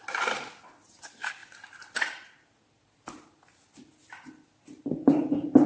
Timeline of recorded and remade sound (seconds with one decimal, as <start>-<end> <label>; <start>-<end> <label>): 0.0-5.7 recorded